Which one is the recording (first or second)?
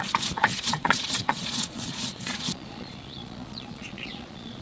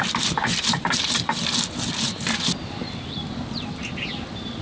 second